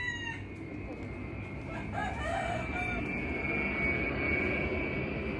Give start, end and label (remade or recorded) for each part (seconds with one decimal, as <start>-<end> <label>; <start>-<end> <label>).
0.0-5.4 recorded